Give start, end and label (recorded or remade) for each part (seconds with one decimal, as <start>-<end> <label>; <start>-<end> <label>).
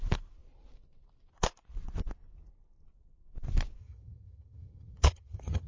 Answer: 0.0-3.8 recorded; 3.8-5.7 remade